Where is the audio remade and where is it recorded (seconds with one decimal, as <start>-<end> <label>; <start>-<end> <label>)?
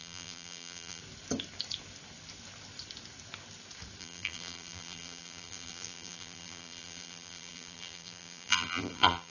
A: 0.0-1.0 remade; 1.0-4.0 recorded; 4.0-9.3 remade